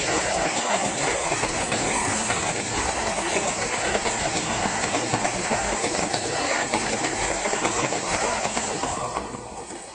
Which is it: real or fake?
fake